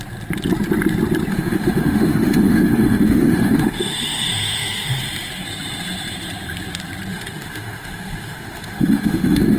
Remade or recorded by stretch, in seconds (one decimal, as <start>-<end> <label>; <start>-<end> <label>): 0.0-1.3 recorded; 1.3-5.0 remade; 5.0-7.1 recorded; 7.1-9.6 remade

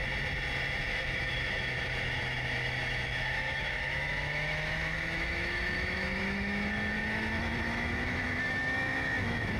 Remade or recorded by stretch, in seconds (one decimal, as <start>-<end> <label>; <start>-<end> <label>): 0.0-0.9 recorded; 0.9-9.6 remade

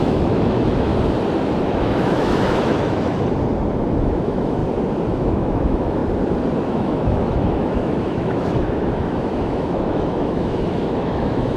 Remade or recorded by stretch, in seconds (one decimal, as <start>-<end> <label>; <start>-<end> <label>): 0.0-0.9 remade; 0.9-1.7 recorded; 1.7-3.1 remade; 3.1-4.0 recorded; 4.0-4.6 remade; 4.6-5.1 recorded; 5.1-6.0 remade; 6.0-6.6 recorded; 6.6-11.6 remade

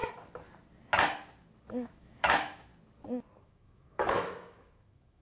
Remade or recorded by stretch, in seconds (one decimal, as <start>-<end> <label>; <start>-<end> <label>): 0.0-1.7 recorded; 1.7-2.7 remade; 2.7-3.4 recorded; 3.4-5.2 remade

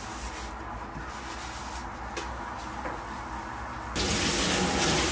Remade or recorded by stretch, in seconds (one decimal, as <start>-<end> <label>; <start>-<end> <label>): 0.0-5.1 recorded

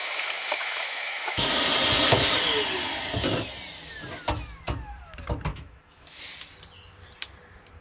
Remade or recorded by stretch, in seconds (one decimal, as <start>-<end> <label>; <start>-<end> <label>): 0.0-1.5 remade; 1.5-5.5 recorded; 5.5-6.2 remade; 6.2-7.8 recorded